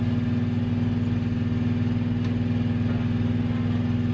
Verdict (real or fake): real